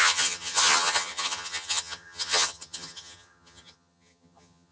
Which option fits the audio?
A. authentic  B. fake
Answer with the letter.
B